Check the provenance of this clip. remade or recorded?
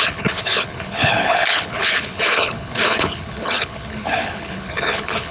remade